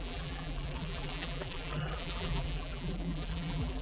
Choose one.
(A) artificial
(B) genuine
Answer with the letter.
A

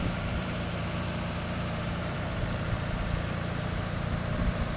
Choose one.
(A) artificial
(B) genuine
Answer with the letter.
A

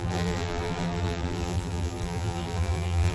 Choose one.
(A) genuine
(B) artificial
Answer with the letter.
B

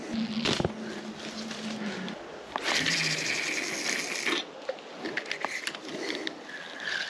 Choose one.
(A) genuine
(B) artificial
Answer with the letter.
A